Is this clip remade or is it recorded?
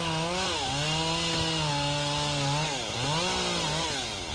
recorded